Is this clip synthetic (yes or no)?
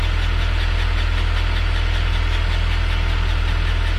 no